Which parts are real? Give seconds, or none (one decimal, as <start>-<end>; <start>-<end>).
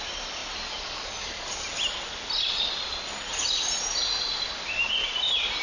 0.0-5.6